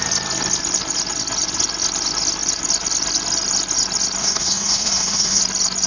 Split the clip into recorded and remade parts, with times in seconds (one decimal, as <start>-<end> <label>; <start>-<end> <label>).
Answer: 0.0-4.2 recorded; 4.2-5.4 remade; 5.4-5.9 recorded